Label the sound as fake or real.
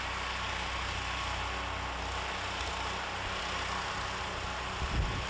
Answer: real